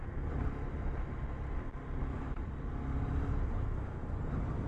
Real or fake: real